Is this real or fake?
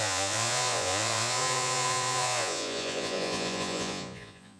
fake